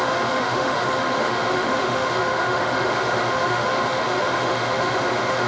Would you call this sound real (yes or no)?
no